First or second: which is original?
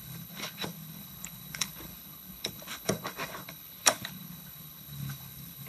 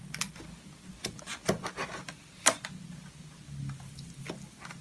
second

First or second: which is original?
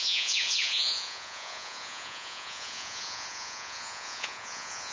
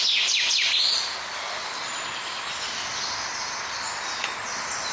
second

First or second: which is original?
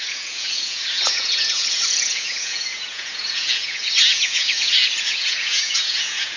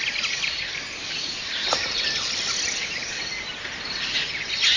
second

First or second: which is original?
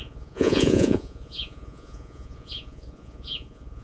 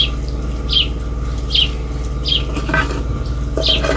second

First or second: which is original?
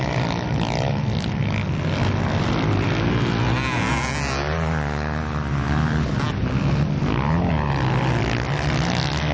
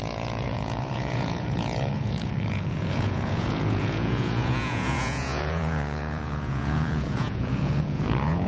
first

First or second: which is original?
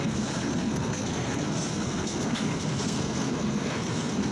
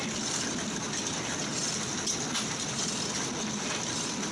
second